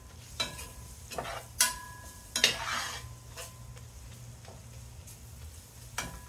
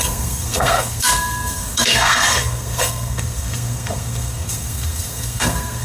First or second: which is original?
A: first